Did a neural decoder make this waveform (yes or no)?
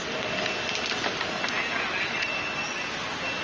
no